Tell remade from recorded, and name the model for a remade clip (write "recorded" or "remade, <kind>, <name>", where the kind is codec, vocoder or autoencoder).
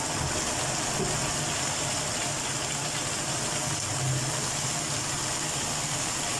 recorded